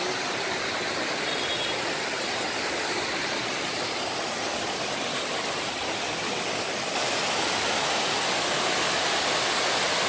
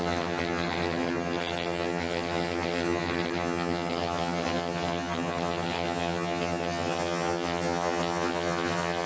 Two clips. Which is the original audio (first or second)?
first